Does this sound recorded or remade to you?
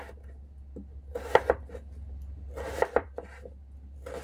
recorded